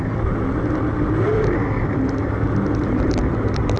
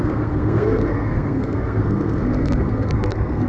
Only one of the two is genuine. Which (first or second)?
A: first